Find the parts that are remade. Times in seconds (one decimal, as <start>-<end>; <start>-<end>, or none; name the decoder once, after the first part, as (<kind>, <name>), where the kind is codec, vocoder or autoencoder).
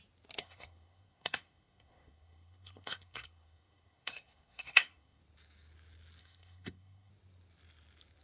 0.4-5.2 (codec, SNAC); 6.2-7.1